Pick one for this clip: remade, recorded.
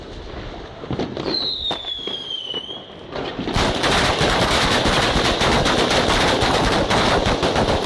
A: recorded